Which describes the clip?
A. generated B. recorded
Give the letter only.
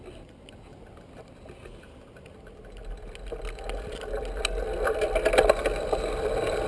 B